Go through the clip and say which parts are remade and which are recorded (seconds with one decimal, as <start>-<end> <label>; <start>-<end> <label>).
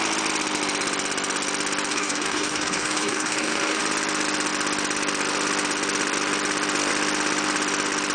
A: 0.0-1.9 recorded; 1.9-3.8 remade; 3.8-8.1 recorded